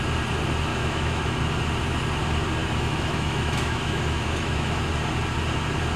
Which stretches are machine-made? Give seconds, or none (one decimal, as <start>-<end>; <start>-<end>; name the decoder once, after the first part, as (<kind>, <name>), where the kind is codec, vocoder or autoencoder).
0.7-1.4 (autoencoder, DAC-VAE); 2.6-4.8